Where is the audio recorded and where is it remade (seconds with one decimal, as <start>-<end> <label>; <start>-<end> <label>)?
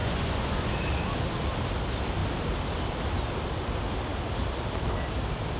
0.0-0.7 remade; 0.7-5.6 recorded